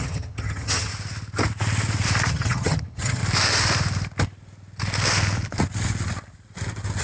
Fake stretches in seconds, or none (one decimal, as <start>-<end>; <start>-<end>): 0.0-0.9; 2.3-3.2